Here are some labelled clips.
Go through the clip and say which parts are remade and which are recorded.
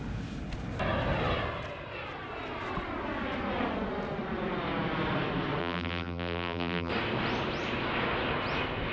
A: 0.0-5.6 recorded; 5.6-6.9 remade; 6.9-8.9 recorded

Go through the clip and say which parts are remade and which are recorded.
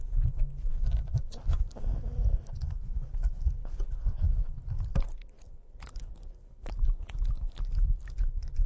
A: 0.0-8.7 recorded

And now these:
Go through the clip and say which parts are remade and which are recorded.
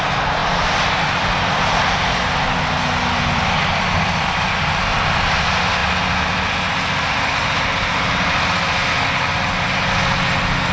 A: 0.0-0.4 recorded; 0.4-1.6 remade; 1.6-10.7 recorded